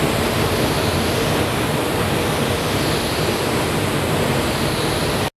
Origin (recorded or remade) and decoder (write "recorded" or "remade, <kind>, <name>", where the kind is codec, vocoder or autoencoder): recorded